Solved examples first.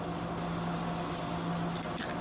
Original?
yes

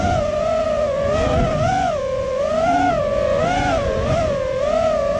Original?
no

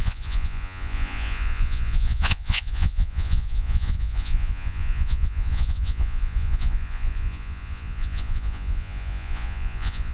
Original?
no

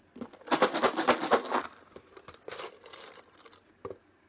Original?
yes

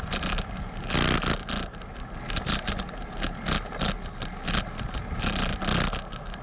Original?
yes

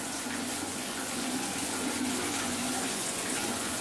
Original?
no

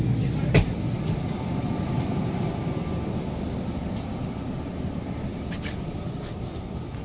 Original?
yes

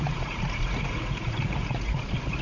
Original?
no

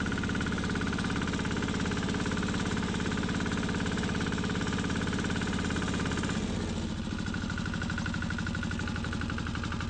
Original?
yes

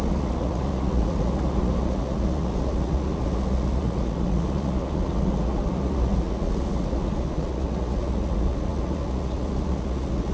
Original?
no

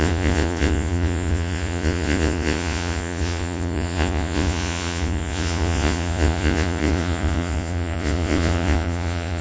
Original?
no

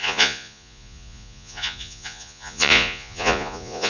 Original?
no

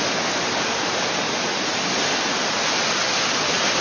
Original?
yes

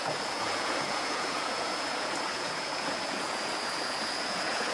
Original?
no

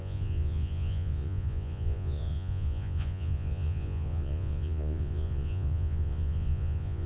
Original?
no